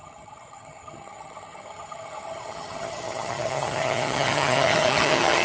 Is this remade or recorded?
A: remade